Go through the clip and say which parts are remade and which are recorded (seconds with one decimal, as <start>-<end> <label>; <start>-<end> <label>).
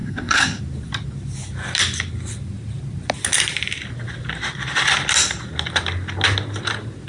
0.0-0.6 remade; 0.6-7.1 recorded